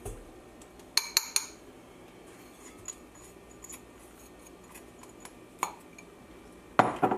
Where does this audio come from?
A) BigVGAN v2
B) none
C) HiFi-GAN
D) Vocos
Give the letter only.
B